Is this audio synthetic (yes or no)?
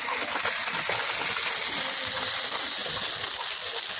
no